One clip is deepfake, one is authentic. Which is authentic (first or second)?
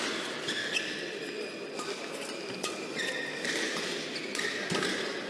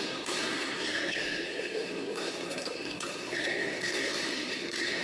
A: first